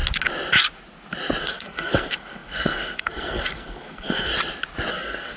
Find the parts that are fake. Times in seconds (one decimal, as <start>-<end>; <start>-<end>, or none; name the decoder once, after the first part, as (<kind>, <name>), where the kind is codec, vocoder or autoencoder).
1.4-4.3 (codec, SNAC); 4.9-5.4